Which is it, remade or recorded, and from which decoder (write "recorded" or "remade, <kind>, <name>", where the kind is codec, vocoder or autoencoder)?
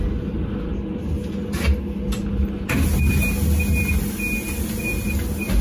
recorded